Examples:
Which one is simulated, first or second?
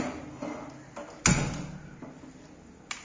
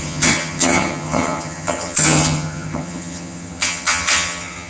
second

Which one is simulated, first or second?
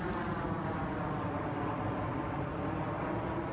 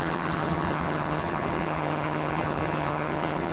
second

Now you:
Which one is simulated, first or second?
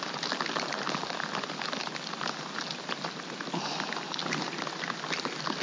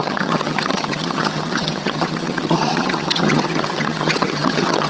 second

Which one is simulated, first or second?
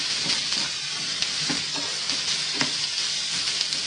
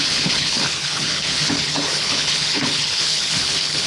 second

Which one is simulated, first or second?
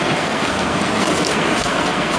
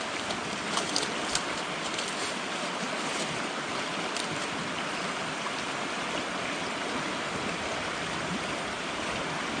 first